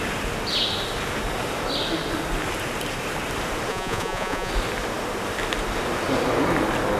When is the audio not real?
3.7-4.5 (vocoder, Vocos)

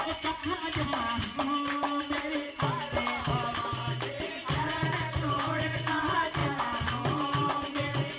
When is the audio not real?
0.0-0.4 (vocoder, Vocos); 5.3-6.4; 7.5-8.2

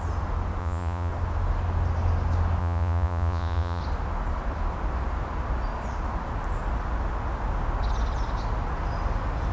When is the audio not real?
0.6-1.1 (vocoder, Vocos); 2.6-3.8